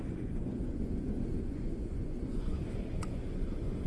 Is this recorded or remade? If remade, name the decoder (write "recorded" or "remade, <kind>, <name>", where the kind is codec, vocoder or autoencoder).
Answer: remade, vocoder, Vocos